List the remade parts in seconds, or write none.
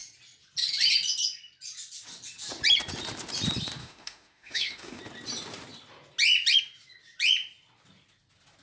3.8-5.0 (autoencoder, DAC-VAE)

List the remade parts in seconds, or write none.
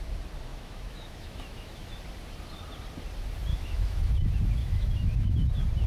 0.5-2.0 (autoencoder, DAC-VAE); 3.5-4.1; 4.6-5.5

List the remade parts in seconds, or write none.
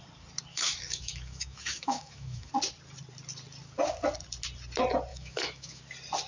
0.5-2.5 (autoencoder, DAC-VAE); 5.1-5.8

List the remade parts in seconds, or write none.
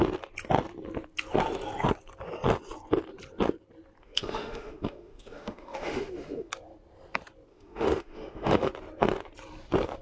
4.0-6.5 (autoencoder, DAC-VAE); 7.5-8.7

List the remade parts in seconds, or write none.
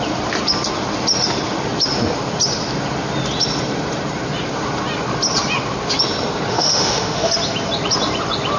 6.5-7.3 (autoencoder, DAC-VAE)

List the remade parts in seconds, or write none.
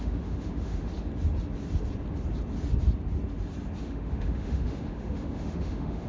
0.0-0.9 (autoencoder, DAC-VAE); 3.8-6.1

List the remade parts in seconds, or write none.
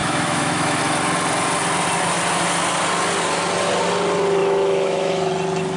0.0-0.8 (autoencoder, DAC-VAE); 4.4-5.3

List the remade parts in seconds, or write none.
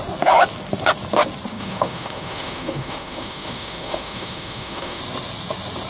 1.5-5.0 (autoencoder, DAC-VAE)